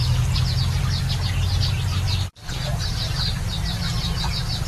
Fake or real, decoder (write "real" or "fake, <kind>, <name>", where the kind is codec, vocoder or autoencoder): real